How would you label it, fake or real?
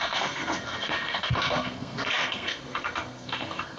fake